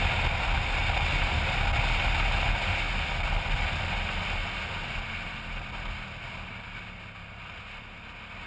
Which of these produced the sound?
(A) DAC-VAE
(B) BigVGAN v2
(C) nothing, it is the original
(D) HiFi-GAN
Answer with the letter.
C